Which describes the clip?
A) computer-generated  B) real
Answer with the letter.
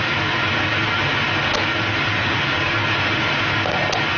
B